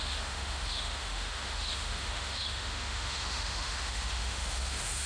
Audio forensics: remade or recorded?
remade